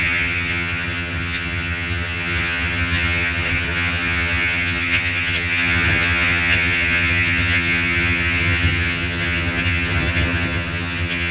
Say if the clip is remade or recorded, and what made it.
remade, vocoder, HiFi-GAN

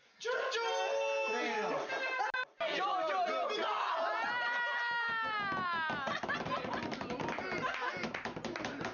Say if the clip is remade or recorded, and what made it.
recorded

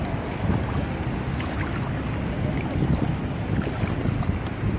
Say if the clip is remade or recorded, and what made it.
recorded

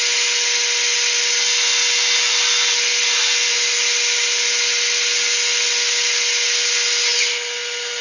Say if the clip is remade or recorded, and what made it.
recorded